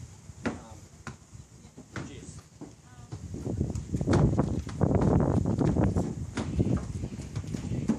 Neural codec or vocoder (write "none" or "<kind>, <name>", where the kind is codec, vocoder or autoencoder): none